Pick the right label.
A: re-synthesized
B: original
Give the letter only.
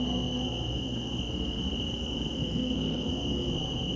A